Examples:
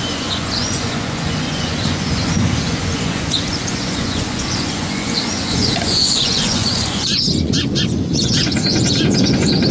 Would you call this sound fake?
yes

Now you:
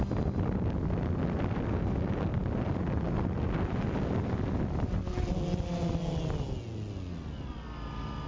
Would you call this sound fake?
no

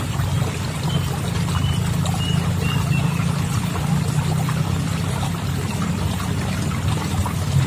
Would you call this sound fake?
no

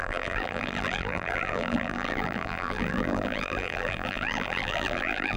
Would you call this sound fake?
yes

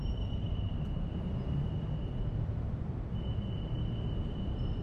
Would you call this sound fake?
yes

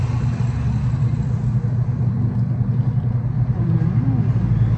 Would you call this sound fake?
no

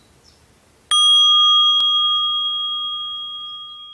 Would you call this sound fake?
no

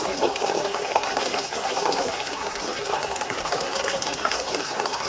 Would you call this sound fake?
yes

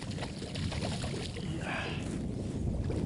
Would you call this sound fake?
no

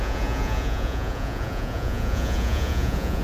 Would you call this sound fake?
yes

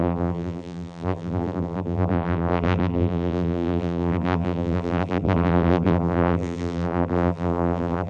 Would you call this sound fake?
yes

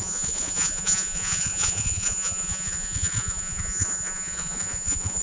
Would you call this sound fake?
yes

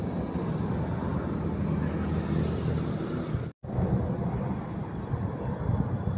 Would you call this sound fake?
no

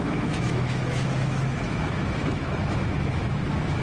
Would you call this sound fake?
yes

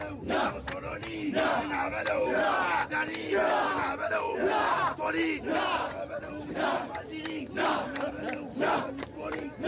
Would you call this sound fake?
no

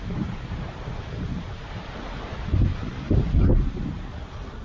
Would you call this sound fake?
no